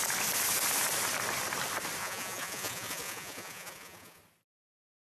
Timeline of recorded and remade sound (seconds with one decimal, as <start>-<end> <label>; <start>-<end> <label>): 0.0-2.0 recorded; 2.0-4.2 remade; 4.2-5.2 recorded